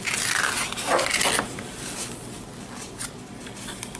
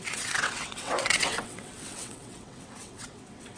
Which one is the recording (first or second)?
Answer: first